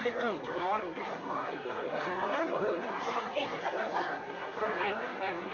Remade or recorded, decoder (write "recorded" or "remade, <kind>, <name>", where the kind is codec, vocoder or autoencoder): remade, codec, SNAC